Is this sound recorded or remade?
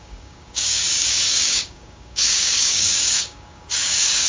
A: remade